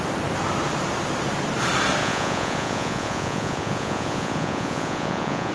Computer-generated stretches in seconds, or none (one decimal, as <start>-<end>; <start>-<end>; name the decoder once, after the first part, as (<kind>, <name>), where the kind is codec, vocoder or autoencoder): 2.0-5.5 (vocoder, Vocos)